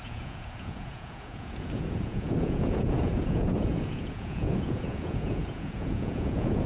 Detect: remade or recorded remade